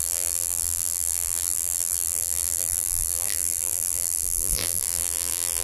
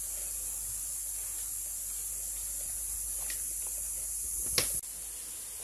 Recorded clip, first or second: second